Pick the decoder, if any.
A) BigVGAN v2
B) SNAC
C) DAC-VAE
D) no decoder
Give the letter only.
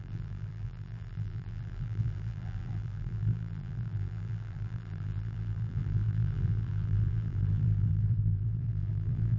A